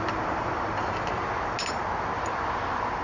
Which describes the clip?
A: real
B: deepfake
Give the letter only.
A